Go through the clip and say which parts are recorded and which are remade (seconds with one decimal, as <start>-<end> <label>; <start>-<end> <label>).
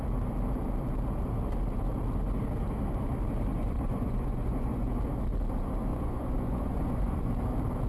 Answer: 0.0-3.5 recorded; 3.5-4.9 remade; 4.9-5.9 recorded; 5.9-7.3 remade; 7.3-7.9 recorded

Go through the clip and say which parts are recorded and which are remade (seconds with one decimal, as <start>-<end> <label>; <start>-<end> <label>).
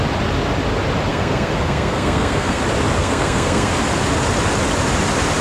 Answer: 0.0-1.1 recorded; 1.1-2.6 remade; 2.6-3.0 recorded; 3.0-3.7 remade; 3.7-5.4 recorded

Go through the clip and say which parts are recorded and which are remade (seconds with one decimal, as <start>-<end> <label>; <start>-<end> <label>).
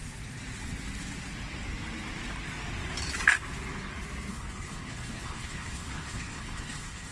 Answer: 0.0-4.3 recorded; 4.3-7.1 remade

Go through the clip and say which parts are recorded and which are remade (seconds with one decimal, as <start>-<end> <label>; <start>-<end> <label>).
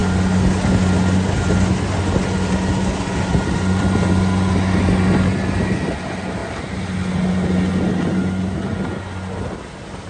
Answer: 0.0-3.3 recorded; 3.3-4.1 remade; 4.1-10.1 recorded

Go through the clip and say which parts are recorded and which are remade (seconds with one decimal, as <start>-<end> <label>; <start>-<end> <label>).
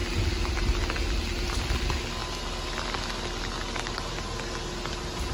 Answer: 0.0-5.3 recorded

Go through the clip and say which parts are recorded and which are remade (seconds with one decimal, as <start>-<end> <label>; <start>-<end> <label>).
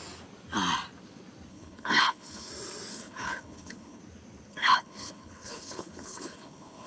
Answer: 0.0-1.5 recorded; 1.5-2.5 remade; 2.5-2.9 recorded; 2.9-4.0 remade; 4.0-4.5 recorded; 4.5-6.9 remade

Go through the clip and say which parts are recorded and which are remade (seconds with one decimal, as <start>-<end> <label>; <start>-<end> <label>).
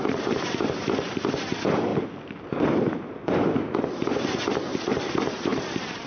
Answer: 0.0-1.9 remade; 1.9-2.6 recorded; 2.6-6.1 remade